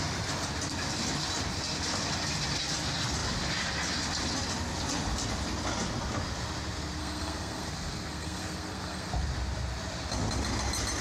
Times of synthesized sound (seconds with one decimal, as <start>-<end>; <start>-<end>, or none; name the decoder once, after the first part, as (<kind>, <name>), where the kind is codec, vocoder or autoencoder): 7.0-9.1 (codec, SNAC)